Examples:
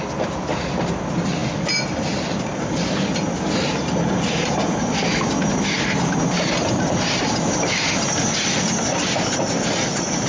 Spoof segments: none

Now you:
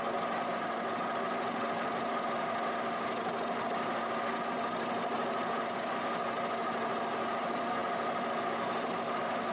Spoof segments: none

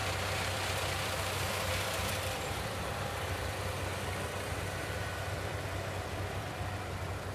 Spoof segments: 0.0-7.3 (vocoder, BigVGAN v2)

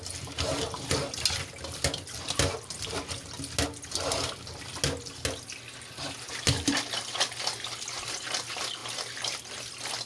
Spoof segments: none

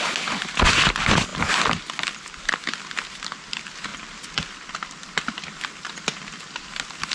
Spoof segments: 3.9-5.9 (vocoder, BigVGAN v2)

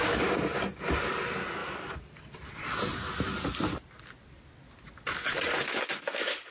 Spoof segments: 1.6-5.5 (vocoder, BigVGAN v2)